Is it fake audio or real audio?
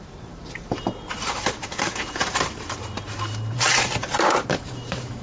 fake